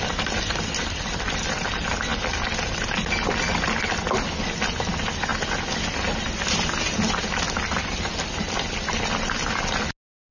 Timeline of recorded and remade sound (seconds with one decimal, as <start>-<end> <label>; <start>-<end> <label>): 0.0-10.3 recorded